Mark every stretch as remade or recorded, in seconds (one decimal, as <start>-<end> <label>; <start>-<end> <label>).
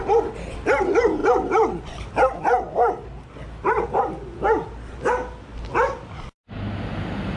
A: 0.0-7.4 recorded